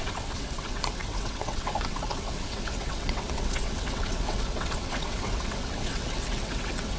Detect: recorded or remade remade